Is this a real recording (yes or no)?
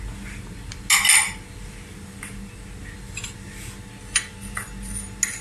yes